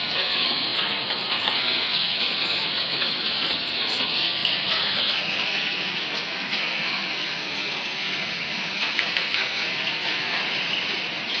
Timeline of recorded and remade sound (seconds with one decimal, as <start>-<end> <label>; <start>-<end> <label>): 0.0-10.4 remade; 10.4-11.4 recorded